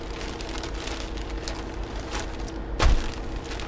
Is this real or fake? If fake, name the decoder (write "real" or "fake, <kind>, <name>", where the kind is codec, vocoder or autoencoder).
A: real